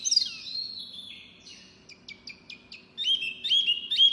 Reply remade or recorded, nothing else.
recorded